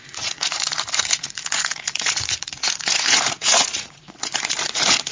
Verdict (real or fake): fake